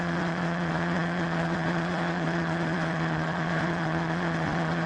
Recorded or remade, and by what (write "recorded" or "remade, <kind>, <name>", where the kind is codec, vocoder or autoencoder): remade, vocoder, Vocos